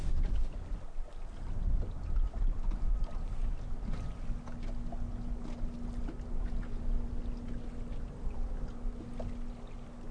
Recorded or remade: recorded